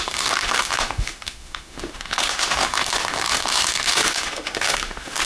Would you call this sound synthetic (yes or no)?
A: yes